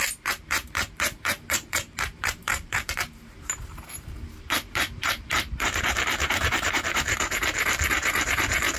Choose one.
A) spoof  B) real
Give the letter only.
A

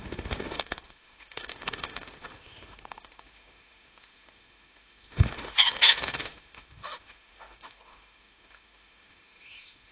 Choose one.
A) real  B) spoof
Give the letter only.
B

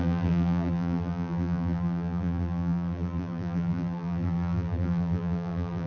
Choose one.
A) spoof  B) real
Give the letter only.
A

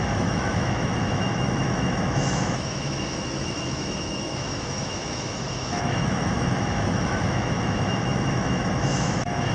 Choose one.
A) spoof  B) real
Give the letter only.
A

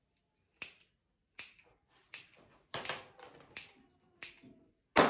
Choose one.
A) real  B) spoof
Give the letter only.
A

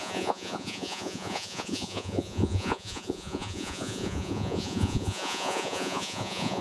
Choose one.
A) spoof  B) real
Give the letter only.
A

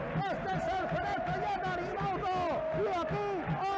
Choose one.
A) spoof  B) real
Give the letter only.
B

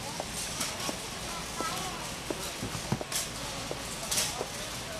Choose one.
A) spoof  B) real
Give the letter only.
B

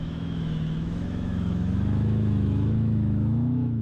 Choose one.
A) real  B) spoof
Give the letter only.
B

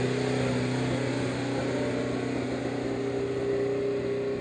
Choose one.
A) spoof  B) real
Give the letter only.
B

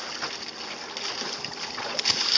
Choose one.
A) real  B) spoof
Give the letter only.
A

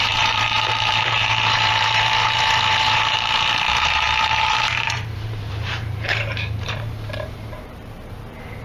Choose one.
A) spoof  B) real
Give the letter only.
A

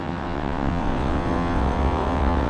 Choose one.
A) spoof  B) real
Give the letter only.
A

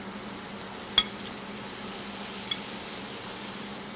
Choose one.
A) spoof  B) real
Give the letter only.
B